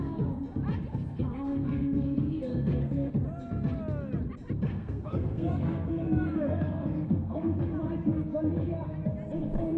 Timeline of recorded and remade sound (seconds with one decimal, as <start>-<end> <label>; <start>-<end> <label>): 0.0-0.9 recorded; 0.9-3.1 remade; 3.1-4.7 recorded; 4.7-7.6 remade; 7.6-9.8 recorded